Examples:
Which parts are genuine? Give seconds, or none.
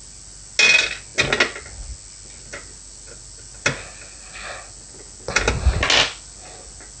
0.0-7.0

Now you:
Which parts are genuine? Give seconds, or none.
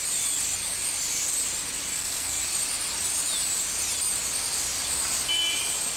0.0-1.9; 2.4-6.0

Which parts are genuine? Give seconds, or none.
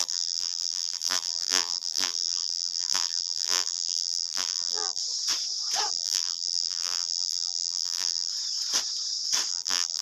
5.0-5.9; 8.3-9.5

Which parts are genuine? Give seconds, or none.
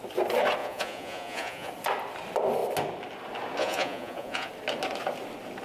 0.0-0.6; 1.7-3.6; 4.5-5.6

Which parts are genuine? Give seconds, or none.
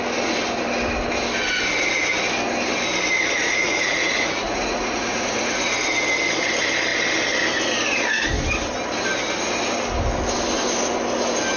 0.0-3.4; 5.9-11.6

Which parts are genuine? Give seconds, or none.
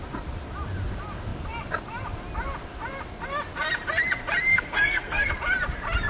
0.0-4.5; 5.3-6.1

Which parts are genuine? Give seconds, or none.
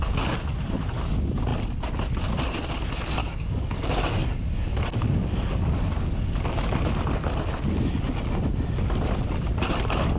0.0-3.2; 6.8-10.2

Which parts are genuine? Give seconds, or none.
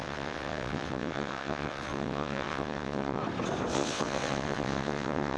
3.2-3.7